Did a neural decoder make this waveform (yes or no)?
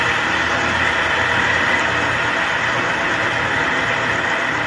no